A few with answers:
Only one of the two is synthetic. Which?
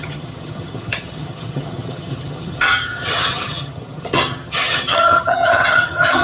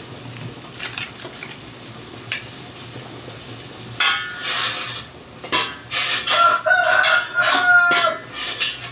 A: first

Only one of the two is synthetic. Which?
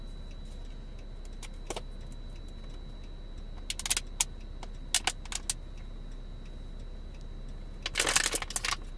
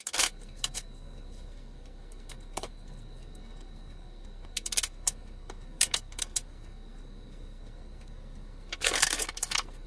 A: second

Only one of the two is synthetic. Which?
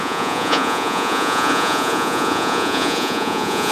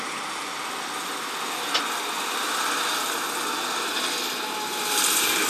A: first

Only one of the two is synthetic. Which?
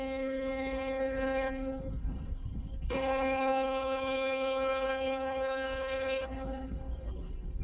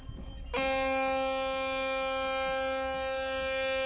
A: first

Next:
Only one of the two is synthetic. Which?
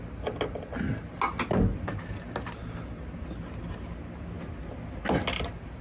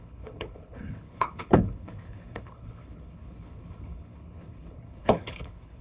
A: second